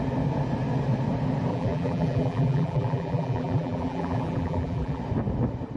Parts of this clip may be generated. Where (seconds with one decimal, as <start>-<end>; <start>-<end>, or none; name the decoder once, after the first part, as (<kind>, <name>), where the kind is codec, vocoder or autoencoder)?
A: 1.5-5.0 (vocoder, BigVGAN v2)